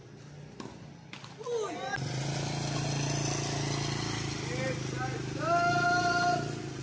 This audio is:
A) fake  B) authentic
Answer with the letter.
B